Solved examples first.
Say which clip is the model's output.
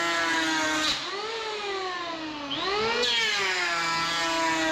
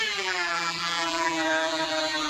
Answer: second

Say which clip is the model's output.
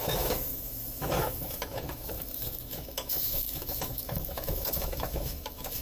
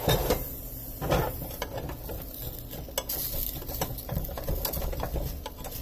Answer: first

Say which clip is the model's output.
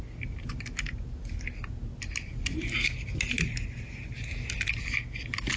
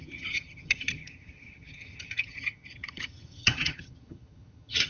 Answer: second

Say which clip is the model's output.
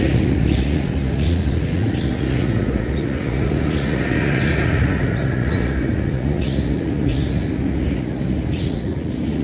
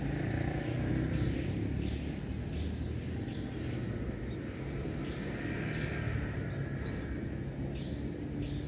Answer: first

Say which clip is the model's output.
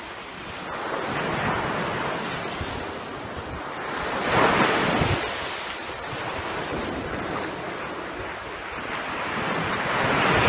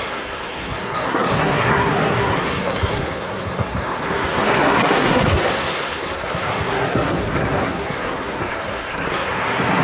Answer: second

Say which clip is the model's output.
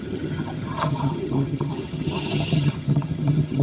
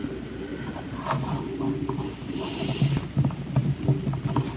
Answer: first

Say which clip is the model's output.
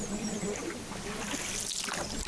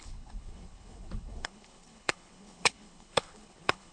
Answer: second